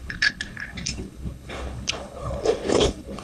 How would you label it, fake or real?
fake